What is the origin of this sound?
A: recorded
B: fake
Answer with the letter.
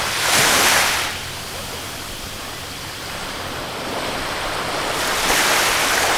B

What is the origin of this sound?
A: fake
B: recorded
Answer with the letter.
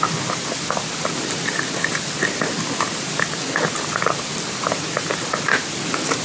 B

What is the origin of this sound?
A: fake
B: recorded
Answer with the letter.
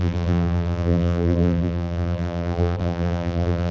A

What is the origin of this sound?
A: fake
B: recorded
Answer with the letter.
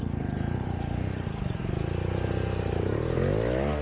B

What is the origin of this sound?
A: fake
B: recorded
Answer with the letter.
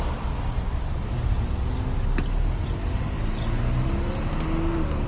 B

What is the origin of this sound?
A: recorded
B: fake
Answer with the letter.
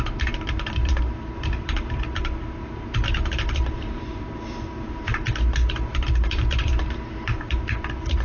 B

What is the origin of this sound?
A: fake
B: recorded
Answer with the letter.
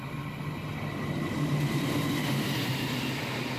B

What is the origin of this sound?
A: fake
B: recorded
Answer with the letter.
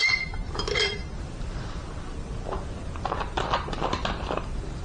A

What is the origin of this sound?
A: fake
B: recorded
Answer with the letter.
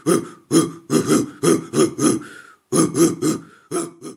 B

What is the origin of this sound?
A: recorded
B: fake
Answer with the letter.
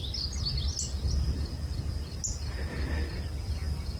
A